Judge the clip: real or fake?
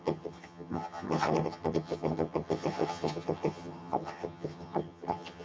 fake